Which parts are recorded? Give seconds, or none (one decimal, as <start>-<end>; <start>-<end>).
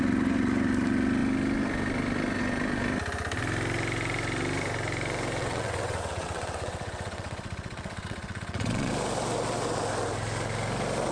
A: 0.0-5.4; 8.9-11.1